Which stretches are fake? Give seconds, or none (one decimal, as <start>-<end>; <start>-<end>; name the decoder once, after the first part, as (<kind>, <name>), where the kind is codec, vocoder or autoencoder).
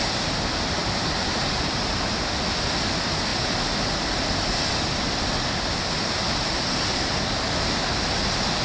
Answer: none